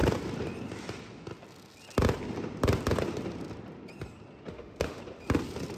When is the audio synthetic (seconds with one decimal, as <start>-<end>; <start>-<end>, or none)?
4.5-5.0